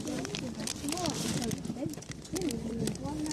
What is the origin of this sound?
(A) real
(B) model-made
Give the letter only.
A